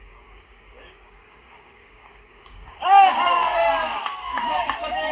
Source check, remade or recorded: remade